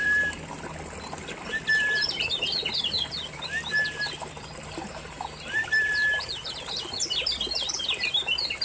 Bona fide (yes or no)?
no